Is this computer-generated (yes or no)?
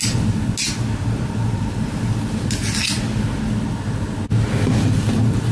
no